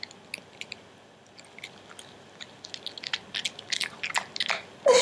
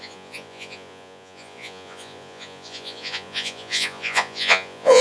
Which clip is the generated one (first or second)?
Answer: second